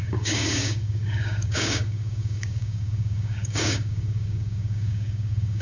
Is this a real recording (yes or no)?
no